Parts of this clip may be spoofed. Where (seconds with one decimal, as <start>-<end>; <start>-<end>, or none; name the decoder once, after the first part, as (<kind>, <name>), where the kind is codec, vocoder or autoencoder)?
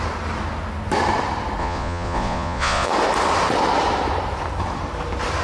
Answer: 1.6-2.9 (vocoder, Vocos)